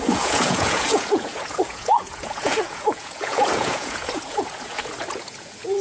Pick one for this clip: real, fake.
fake